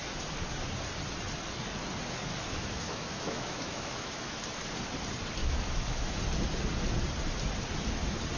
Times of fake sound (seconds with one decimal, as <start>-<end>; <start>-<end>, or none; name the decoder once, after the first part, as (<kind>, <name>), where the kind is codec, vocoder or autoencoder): 2.5-4.4 (autoencoder, DAC-VAE); 5.4-6.2